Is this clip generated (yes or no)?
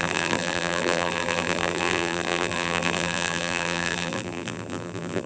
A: yes